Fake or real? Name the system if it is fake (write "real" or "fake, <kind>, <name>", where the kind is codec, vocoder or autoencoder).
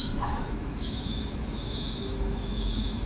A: fake, autoencoder, DAC-VAE